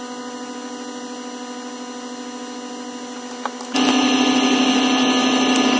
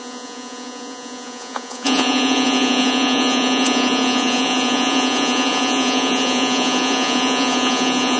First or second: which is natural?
first